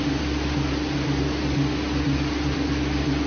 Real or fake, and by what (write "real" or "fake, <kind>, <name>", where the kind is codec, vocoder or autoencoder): real